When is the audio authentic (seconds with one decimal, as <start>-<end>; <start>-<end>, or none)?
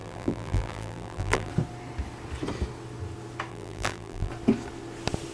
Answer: 1.5-3.5; 4.3-5.3